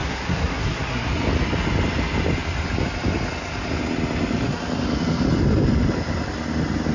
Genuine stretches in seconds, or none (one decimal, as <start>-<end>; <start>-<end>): 1.1-6.9